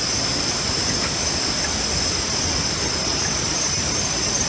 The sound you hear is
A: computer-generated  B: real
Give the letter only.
B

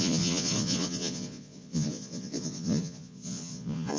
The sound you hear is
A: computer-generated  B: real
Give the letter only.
A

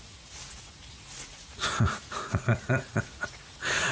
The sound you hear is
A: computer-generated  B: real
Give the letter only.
A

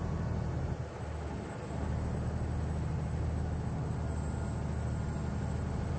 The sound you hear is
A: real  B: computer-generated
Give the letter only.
A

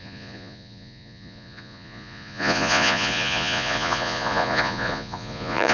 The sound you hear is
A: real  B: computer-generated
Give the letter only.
B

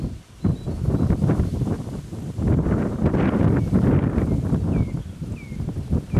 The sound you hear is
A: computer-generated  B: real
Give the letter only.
B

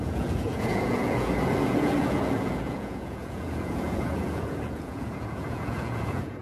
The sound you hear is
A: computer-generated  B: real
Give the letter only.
A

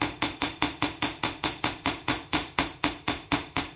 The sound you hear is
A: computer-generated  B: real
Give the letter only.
A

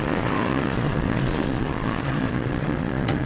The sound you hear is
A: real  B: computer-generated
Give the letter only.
B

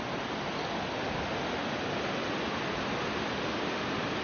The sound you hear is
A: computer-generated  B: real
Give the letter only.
B